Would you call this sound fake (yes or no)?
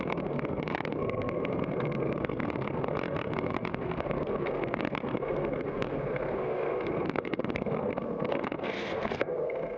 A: yes